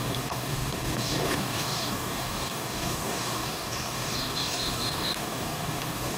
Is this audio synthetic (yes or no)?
yes